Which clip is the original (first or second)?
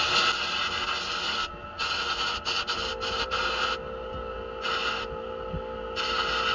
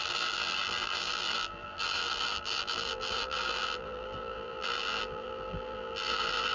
first